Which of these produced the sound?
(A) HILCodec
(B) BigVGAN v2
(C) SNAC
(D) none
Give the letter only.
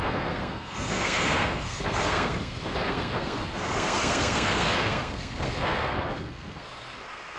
C